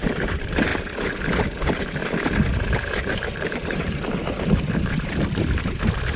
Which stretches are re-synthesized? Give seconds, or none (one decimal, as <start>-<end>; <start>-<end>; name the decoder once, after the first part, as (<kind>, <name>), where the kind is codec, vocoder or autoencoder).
0.0-0.7 (vocoder, BigVGAN v2); 3.1-6.2